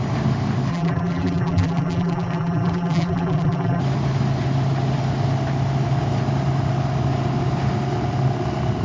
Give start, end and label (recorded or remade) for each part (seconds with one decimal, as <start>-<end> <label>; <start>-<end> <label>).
0.0-0.7 recorded; 0.7-3.8 remade; 3.8-8.8 recorded